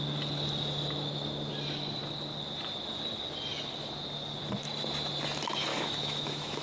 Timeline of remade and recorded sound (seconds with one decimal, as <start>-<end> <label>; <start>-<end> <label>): 0.0-5.7 recorded; 5.7-6.6 remade